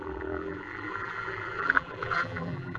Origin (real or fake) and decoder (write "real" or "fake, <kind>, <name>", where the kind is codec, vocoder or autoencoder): fake, vocoder, BigVGAN v2